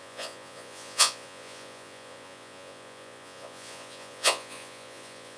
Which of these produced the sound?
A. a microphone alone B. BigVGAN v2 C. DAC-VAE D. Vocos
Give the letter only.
D